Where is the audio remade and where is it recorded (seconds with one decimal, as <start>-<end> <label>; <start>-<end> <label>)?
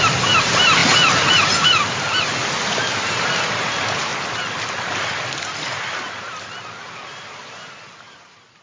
0.0-0.8 remade; 0.8-1.4 recorded; 1.4-2.4 remade; 2.4-3.1 recorded; 3.1-4.1 remade; 4.1-7.9 recorded; 7.9-8.6 remade